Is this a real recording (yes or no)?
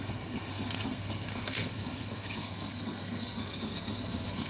no